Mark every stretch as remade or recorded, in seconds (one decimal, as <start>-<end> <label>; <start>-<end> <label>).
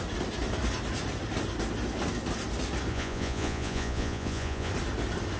0.0-2.9 recorded; 2.9-4.7 remade; 4.7-5.4 recorded